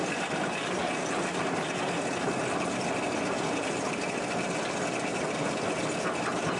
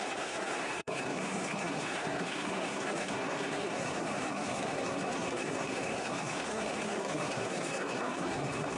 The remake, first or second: second